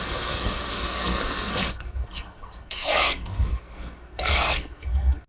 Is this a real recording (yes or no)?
no